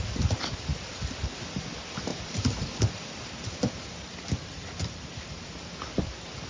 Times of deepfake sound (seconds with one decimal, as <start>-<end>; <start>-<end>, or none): none